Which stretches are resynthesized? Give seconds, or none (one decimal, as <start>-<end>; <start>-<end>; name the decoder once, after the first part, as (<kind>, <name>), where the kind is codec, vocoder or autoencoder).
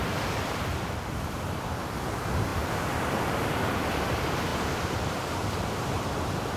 0.0-6.6 (vocoder, BigVGAN v2)